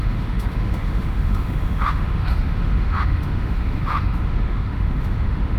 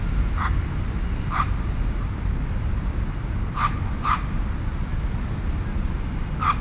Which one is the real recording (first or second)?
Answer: second